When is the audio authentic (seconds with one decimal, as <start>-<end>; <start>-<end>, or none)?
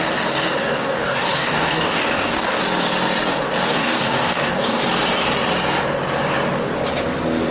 0.0-0.6; 2.6-3.7; 4.8-7.5